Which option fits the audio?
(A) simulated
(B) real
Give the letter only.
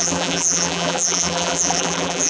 A